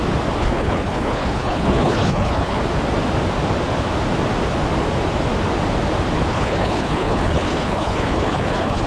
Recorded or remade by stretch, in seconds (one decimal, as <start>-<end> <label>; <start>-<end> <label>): 0.0-0.4 recorded; 0.4-2.6 remade; 2.6-6.3 recorded; 6.3-8.9 remade